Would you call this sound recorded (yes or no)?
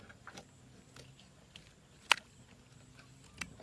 yes